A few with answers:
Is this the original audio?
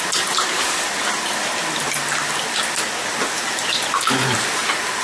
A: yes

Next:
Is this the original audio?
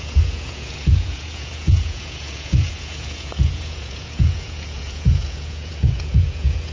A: no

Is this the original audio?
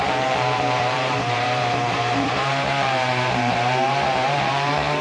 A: no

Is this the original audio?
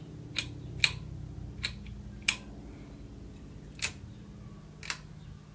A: yes